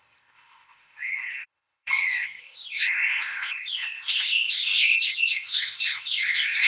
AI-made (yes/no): yes